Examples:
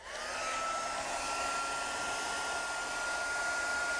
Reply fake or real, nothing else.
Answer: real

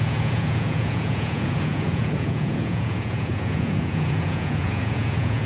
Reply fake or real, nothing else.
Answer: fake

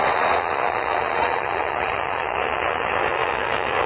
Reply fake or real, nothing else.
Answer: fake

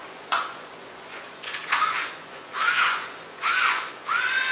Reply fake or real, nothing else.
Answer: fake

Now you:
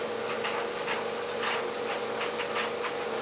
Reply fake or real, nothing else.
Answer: real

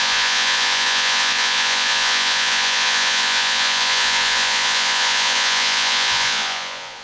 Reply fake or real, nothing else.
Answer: fake